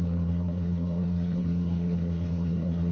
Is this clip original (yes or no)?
no